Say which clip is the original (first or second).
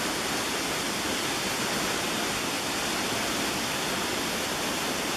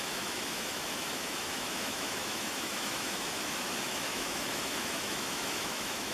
first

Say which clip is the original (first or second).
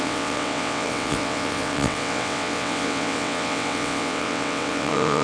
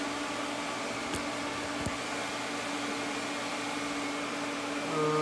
second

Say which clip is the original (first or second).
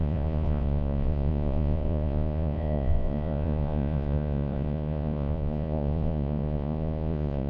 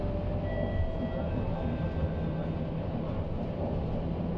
second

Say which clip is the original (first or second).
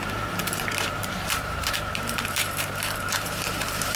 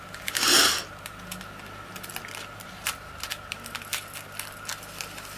second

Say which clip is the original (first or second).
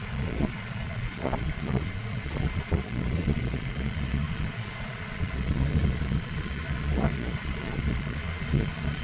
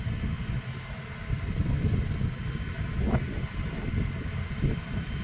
second